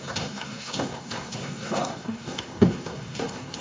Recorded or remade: remade